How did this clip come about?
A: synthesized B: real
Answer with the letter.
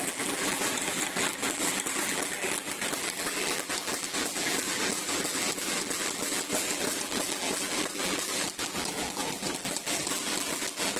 A